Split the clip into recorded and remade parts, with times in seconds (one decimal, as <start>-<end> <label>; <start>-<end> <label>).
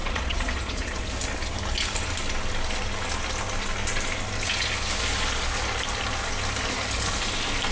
0.0-1.0 remade; 1.0-7.7 recorded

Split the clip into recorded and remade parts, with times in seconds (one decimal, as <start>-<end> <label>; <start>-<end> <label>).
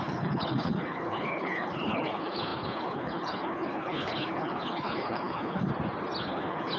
0.0-5.7 remade; 5.7-6.2 recorded; 6.2-6.8 remade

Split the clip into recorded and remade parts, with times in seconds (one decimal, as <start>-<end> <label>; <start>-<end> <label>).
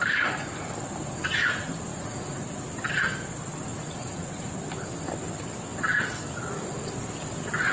0.0-1.9 recorded; 1.9-2.7 remade; 2.7-3.7 recorded; 3.7-4.5 remade; 4.5-7.7 recorded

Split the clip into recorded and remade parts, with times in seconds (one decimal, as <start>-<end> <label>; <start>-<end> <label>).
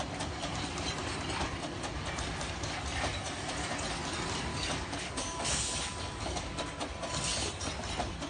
0.0-4.5 recorded; 4.5-6.7 remade; 6.7-8.3 recorded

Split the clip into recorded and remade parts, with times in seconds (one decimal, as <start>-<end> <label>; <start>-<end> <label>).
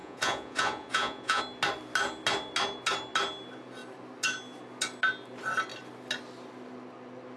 0.0-1.4 remade; 1.4-7.4 recorded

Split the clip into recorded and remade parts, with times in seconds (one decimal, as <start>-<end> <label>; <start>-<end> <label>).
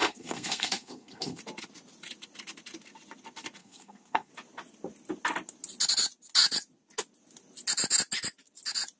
0.0-1.4 remade; 1.4-3.6 recorded; 3.6-4.3 remade; 4.3-9.0 recorded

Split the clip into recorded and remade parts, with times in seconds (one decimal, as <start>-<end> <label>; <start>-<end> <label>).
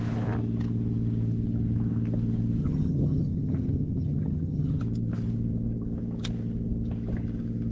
0.0-2.6 recorded; 2.6-4.8 remade; 4.8-7.7 recorded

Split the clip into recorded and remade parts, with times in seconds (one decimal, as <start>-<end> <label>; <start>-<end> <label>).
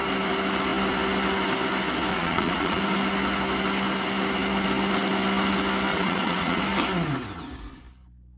0.0-2.1 recorded; 2.1-2.8 remade; 2.8-5.9 recorded; 5.9-6.6 remade; 6.6-8.4 recorded